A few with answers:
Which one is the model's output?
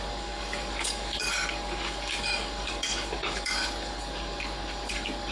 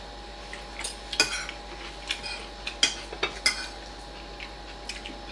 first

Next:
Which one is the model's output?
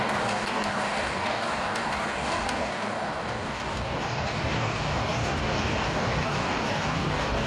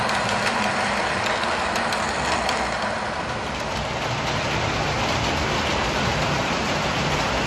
first